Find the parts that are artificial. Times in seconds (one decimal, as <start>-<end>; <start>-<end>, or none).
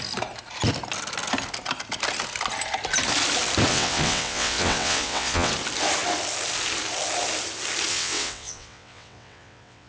3.7-5.5; 7.9-9.9